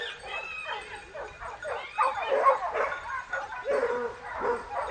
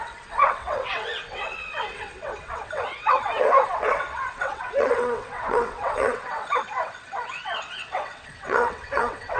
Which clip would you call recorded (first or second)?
first